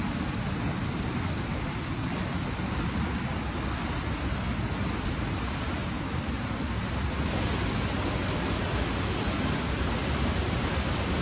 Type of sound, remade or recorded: recorded